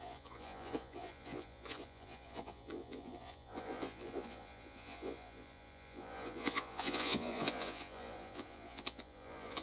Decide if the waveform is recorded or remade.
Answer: remade